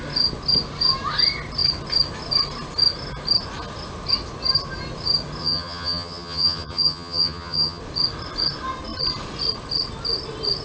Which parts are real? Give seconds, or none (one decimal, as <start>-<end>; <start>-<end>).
0.0-5.4; 7.8-10.6